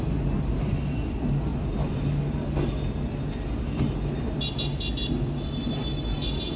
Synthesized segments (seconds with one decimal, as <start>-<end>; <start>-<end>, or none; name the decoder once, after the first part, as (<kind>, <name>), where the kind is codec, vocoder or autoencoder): none